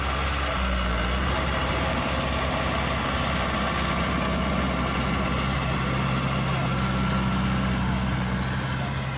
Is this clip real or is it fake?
real